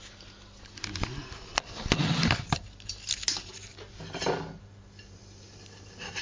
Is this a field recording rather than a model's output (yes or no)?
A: yes